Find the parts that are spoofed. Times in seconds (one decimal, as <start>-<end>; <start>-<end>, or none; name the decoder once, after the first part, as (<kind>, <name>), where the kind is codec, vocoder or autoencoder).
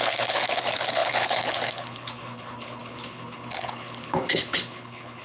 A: 0.0-5.2 (codec, HILCodec)